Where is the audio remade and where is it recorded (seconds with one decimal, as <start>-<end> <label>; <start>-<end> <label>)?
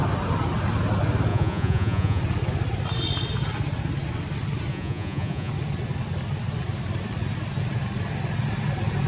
0.0-1.3 recorded; 1.3-2.2 remade; 2.2-4.7 recorded; 4.7-5.5 remade; 5.5-9.1 recorded